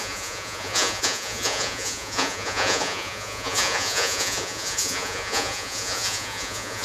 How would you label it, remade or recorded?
remade